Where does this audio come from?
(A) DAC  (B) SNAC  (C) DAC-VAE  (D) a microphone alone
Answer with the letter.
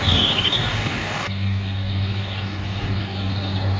A